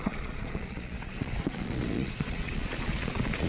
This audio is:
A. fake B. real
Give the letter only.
A